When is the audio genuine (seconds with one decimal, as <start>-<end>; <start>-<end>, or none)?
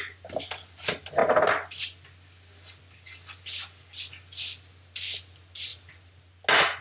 0.0-6.8